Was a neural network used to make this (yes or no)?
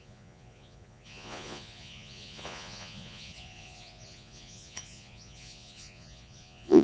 yes